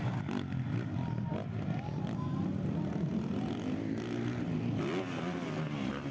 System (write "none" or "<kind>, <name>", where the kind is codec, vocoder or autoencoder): none